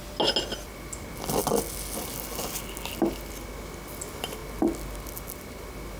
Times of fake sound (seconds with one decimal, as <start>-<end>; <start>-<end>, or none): none